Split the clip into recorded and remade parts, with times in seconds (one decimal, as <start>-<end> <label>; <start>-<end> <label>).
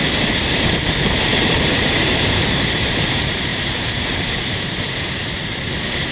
0.0-0.7 recorded; 0.7-6.1 remade